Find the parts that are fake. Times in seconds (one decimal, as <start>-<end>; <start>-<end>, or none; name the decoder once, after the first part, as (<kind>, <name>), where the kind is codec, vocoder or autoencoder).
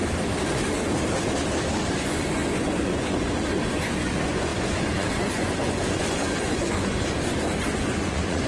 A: 1.9-8.5 (vocoder, Vocos)